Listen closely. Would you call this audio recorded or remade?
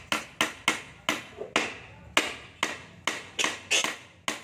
recorded